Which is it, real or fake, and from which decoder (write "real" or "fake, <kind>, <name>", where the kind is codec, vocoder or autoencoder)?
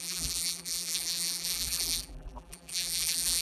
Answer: fake, vocoder, BigVGAN v2